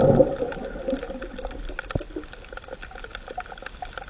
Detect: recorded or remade recorded